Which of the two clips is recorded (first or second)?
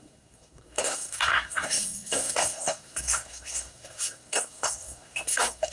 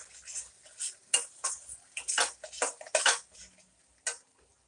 second